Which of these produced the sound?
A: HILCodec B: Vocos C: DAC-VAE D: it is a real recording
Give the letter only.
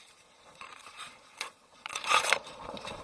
B